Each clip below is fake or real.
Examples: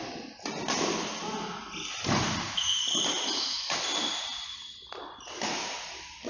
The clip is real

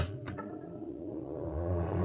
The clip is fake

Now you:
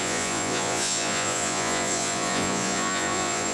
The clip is fake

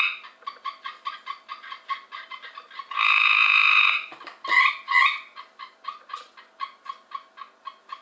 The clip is real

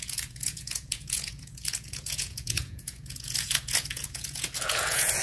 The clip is fake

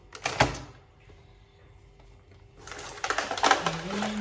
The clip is real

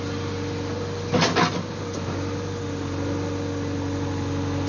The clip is real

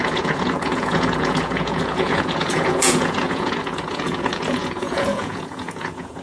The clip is fake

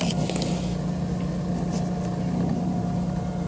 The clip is real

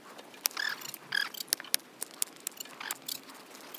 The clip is real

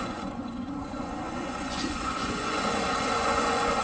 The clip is fake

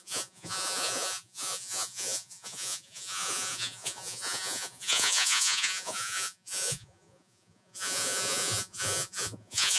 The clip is fake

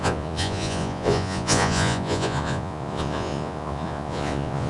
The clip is fake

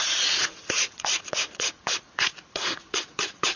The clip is fake